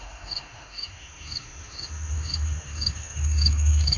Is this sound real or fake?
fake